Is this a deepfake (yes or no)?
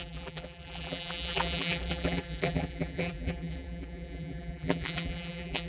yes